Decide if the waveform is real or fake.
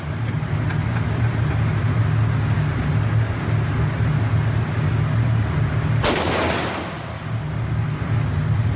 real